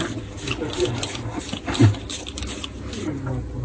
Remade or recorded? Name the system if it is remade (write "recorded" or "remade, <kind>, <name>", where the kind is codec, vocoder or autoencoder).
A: recorded